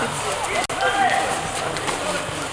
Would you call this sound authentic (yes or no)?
yes